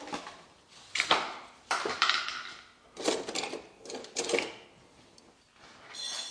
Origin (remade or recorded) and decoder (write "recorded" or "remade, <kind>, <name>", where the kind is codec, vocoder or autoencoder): recorded